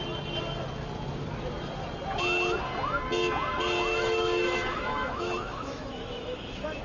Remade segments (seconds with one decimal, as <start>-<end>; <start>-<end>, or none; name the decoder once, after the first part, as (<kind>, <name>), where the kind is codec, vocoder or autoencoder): 3.9-6.8 (autoencoder, DAC-VAE)